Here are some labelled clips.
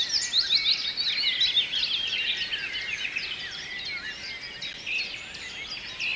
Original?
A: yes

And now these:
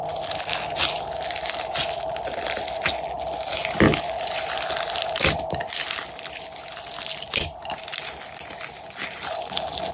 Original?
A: yes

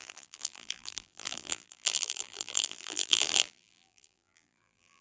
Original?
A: no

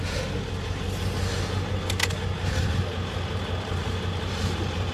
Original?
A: yes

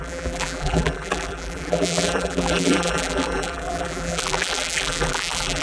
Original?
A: no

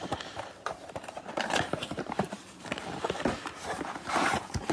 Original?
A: no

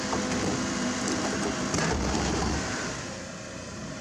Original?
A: no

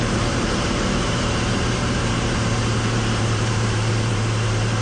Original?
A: no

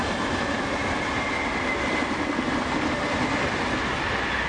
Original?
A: yes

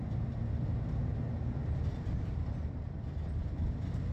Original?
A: no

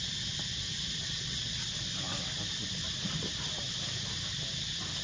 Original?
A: yes